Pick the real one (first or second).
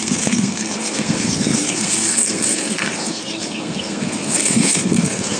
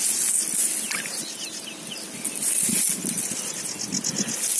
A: second